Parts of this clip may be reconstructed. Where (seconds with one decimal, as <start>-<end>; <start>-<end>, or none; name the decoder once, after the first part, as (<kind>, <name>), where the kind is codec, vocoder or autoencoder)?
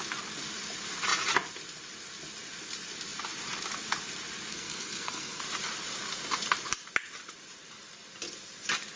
4.5-5.4 (codec, SNAC)